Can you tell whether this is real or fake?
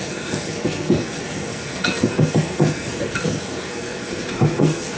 fake